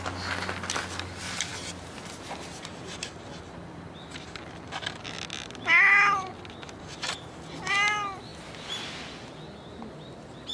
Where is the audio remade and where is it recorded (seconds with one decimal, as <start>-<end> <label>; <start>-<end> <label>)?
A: 0.0-10.5 recorded